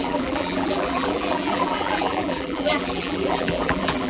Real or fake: fake